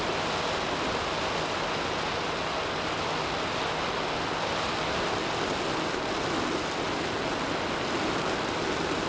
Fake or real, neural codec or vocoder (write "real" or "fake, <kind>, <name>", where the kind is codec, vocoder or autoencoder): real